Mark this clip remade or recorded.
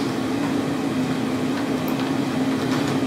recorded